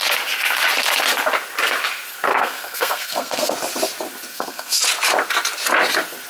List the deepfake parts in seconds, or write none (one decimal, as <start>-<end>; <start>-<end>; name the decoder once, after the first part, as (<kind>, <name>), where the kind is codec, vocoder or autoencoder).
2.3-3.5 (codec, SNAC); 4.3-4.8